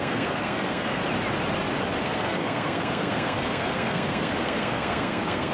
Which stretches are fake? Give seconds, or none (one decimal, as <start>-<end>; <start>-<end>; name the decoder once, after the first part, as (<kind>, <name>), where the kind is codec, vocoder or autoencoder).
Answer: 0.0-1.0 (codec, SNAC); 2.0-5.5